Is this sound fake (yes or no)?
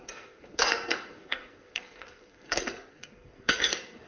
yes